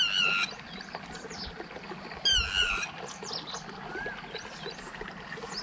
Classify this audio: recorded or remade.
recorded